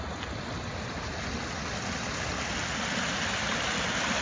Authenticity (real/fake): real